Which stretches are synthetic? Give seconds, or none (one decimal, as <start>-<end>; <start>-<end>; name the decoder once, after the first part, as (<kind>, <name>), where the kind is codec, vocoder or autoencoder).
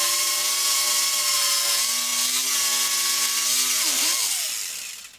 none